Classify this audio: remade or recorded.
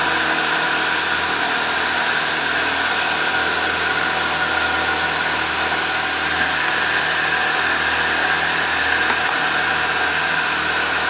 recorded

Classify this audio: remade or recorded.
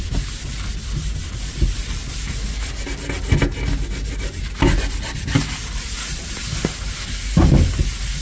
recorded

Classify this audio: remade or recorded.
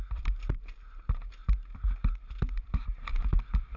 remade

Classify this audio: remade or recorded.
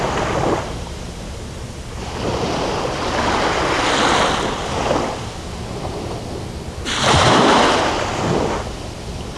recorded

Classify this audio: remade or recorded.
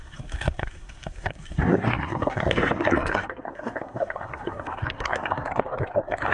remade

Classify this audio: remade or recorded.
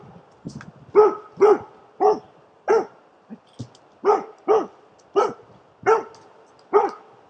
recorded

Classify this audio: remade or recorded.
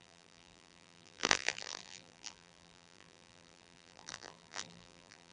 remade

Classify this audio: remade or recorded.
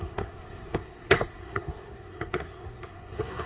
remade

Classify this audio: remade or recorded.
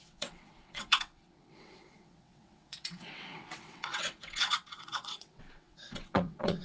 remade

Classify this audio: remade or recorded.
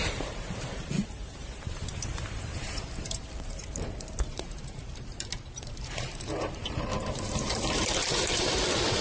remade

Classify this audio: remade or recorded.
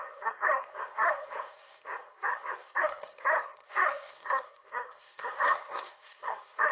remade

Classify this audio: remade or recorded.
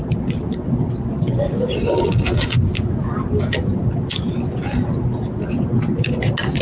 recorded